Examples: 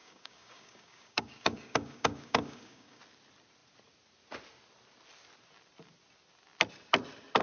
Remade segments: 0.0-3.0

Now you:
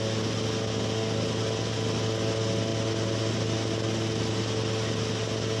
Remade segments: none

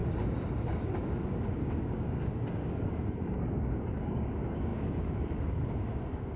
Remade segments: 0.0-6.4

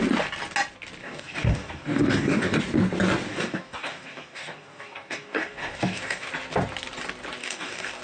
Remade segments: 1.0-2.6; 3.3-6.3; 7.4-8.0